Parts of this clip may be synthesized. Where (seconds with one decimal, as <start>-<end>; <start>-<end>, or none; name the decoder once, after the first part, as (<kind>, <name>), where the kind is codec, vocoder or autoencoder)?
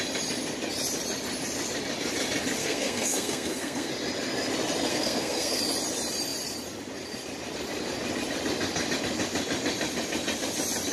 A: 2.6-3.9 (codec, SNAC); 4.9-5.6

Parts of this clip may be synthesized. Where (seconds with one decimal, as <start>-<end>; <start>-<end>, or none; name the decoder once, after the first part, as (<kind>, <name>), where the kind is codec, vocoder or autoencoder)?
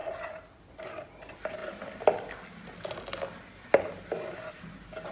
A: none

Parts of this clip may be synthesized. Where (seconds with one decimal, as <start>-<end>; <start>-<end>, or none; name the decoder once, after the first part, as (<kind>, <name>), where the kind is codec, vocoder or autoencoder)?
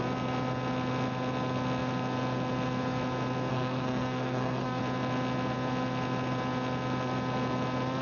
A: 3.5-4.8 (codec, SNAC)